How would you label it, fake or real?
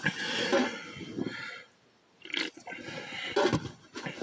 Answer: real